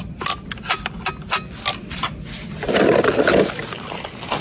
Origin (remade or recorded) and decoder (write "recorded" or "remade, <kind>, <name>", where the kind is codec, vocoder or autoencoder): recorded